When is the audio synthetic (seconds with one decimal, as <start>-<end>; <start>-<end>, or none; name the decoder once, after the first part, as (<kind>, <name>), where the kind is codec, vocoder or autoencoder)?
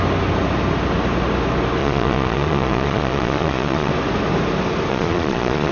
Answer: 1.8-3.9 (vocoder, Vocos); 4.9-5.7